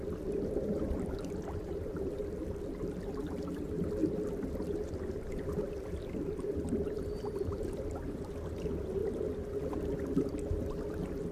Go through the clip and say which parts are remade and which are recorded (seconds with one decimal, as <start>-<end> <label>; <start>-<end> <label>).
0.0-4.0 remade; 4.0-5.1 recorded; 5.1-9.0 remade; 9.0-9.6 recorded; 9.6-11.3 remade